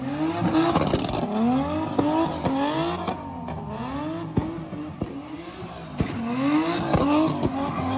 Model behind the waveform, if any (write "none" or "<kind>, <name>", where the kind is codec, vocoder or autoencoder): none